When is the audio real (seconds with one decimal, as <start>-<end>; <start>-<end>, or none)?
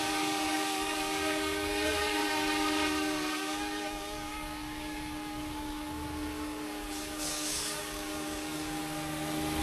2.2-3.3; 8.8-9.6